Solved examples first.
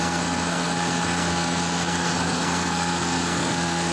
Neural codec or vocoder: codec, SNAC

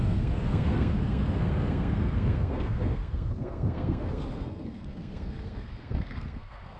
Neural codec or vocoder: codec, SNAC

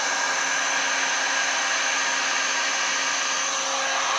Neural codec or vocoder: none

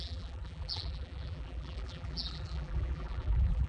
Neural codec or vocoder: vocoder, BigVGAN v2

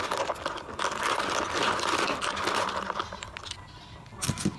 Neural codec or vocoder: none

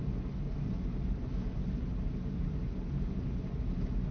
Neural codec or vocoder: none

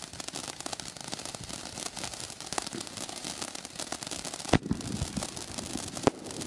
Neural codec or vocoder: none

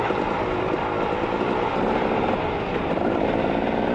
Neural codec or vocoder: none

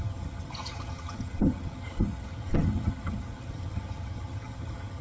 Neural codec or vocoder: vocoder, HiFi-GAN